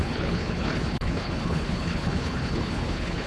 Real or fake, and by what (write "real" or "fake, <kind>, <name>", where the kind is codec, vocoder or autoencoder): fake, codec, HILCodec